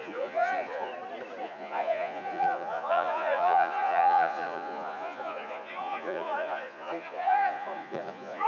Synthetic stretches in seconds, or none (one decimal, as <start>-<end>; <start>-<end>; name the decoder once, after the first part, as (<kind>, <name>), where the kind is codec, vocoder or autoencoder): 0.0-0.9 (vocoder, Vocos); 1.4-8.5